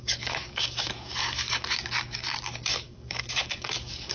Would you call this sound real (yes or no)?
no